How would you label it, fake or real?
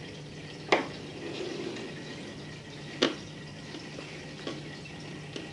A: real